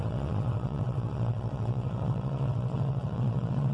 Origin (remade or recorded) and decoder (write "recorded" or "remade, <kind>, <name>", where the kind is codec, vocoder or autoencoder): remade, vocoder, WaveNeXt